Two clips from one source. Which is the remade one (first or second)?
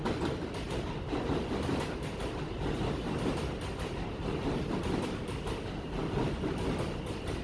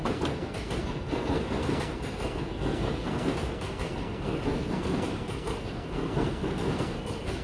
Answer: second